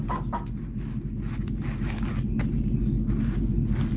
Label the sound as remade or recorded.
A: recorded